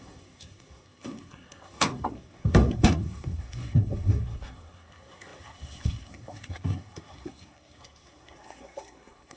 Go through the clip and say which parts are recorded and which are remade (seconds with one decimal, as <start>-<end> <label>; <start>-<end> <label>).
0.0-9.4 remade